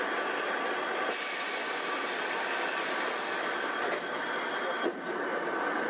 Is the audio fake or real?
real